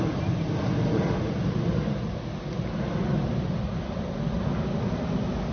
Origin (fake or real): real